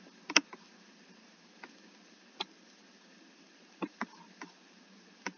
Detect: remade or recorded recorded